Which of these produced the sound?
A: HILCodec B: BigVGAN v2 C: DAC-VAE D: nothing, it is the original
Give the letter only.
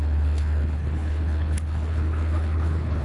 A